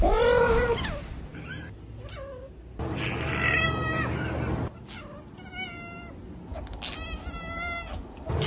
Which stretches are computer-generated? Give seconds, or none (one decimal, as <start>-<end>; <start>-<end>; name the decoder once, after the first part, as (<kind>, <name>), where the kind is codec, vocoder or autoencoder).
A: none